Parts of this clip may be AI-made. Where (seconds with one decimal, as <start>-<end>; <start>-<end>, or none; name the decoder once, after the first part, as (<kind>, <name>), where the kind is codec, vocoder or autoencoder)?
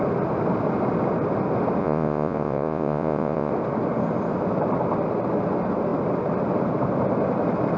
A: 1.8-3.5 (vocoder, Vocos)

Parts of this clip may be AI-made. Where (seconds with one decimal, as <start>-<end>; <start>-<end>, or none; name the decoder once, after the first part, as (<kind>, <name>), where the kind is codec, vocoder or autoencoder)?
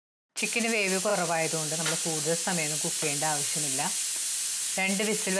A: none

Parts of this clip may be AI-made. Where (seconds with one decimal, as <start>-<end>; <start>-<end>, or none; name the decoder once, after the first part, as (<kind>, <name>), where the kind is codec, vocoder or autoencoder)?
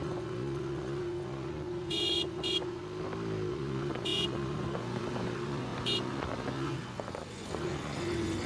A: 0.0-2.8 (vocoder, Vocos); 3.5-8.5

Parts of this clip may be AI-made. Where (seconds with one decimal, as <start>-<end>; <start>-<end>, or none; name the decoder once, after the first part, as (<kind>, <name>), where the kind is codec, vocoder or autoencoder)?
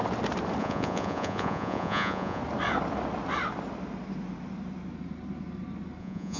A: 0.6-2.4 (vocoder, Vocos); 6.0-6.4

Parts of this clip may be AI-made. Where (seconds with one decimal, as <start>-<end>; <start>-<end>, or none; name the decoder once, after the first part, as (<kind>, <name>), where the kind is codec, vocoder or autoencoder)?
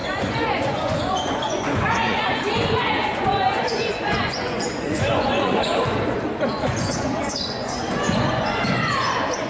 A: 0.0-5.7 (vocoder, Vocos); 6.5-9.5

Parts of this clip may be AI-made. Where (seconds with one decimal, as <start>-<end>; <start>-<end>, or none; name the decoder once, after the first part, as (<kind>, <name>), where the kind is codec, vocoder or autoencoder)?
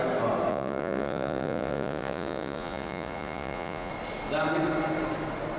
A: 0.5-3.9 (vocoder, Vocos)